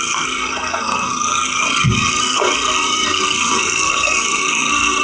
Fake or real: fake